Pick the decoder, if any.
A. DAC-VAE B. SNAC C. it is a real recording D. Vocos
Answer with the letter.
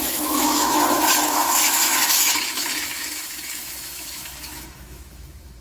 A